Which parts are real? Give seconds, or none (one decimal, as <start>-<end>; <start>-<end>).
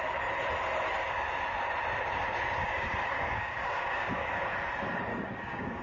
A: 0.0-2.6; 4.4-5.1